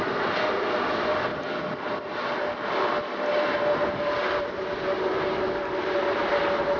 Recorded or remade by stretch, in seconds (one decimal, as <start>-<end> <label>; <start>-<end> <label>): 0.0-6.8 recorded